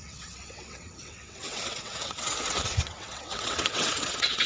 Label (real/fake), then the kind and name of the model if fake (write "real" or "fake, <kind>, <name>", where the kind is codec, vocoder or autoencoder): fake, vocoder, WaveNeXt